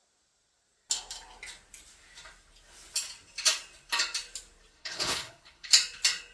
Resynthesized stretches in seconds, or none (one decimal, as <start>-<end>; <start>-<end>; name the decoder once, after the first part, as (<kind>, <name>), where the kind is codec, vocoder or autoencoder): 4.8-5.7 (codec, HILCodec)